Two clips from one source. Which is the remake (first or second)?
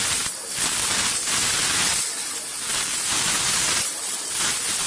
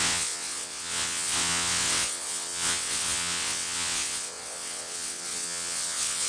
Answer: second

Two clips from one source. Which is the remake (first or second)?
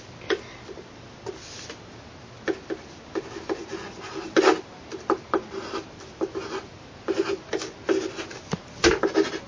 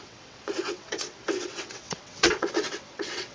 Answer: second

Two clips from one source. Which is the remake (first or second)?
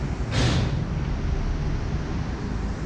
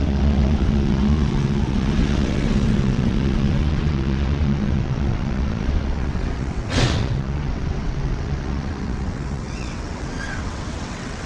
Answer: second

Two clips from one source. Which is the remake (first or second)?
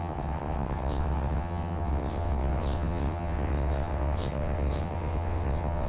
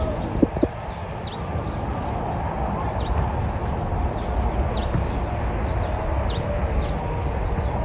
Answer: first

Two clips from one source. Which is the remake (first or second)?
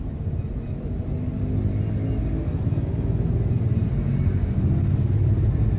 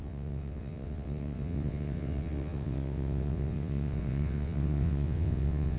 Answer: second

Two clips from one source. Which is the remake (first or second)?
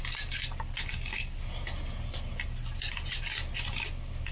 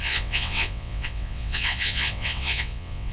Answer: second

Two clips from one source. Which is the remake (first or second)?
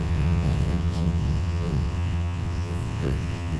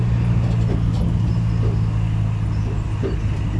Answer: first